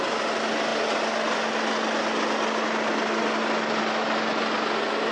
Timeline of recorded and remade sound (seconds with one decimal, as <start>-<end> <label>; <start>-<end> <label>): 0.0-5.1 recorded